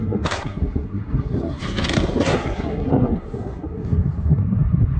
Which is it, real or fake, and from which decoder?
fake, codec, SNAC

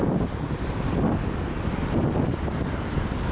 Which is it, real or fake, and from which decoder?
real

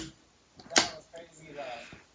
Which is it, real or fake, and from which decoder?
real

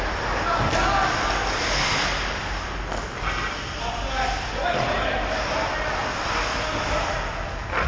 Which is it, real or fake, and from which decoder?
real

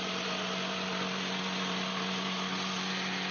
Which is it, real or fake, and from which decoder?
real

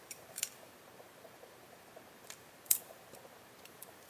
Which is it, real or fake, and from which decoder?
fake, vocoder, BigVGAN v2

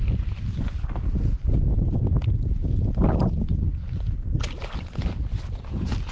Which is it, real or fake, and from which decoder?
real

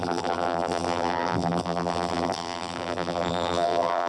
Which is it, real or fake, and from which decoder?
fake, vocoder, BigVGAN v2